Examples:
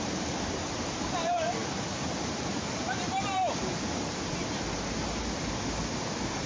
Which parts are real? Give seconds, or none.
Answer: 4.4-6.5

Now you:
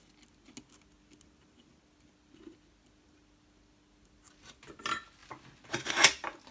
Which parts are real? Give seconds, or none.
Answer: 0.0-6.5

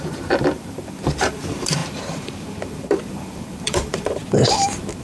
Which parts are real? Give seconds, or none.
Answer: 4.2-5.0

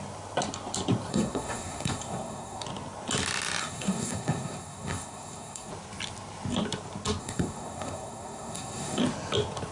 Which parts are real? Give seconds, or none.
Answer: 0.0-1.1; 2.6-3.6; 5.7-7.2; 9.0-9.7